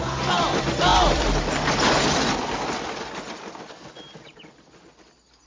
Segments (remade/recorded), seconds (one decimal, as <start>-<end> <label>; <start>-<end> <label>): 0.0-5.5 recorded